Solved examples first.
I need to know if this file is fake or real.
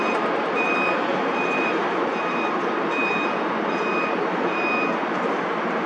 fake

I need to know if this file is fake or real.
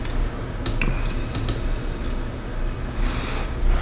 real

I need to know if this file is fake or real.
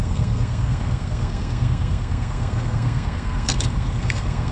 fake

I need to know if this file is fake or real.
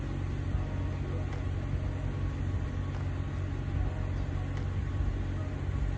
real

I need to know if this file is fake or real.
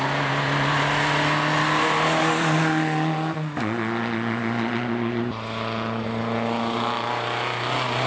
real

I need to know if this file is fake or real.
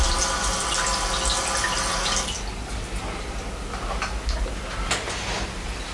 real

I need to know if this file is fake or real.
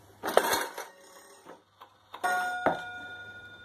real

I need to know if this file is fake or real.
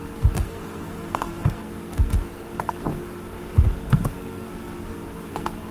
fake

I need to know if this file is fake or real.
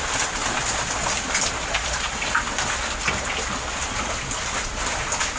real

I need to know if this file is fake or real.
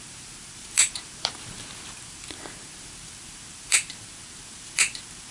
fake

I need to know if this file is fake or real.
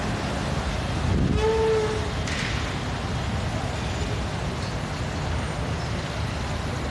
real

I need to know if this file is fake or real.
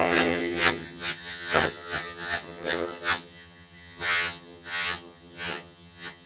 fake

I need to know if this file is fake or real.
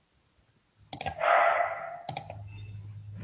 real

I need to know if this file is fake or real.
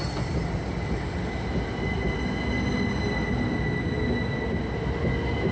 real